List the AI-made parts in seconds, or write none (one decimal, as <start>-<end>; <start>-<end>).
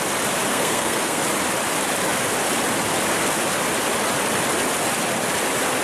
0.5-1.2